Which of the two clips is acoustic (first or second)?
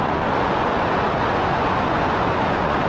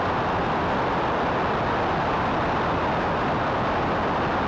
second